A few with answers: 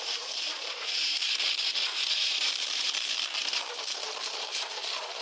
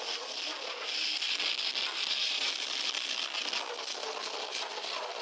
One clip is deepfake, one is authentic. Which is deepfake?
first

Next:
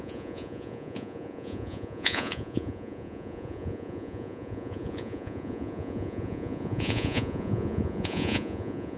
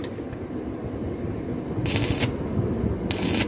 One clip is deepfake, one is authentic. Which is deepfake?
first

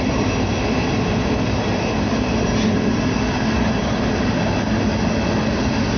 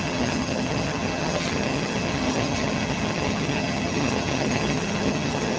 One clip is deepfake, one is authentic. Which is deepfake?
second